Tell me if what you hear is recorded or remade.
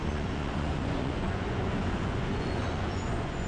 remade